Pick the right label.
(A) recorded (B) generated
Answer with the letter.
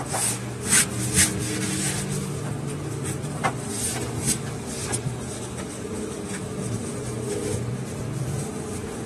A